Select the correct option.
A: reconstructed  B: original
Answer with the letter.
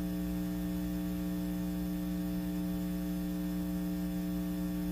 B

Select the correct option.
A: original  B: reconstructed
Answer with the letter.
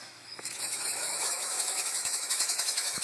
B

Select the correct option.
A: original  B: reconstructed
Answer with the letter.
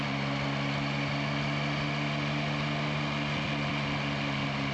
A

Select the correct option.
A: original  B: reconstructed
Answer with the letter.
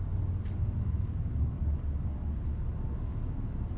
A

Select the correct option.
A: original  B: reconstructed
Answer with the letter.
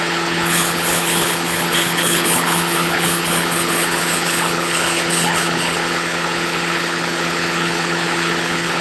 B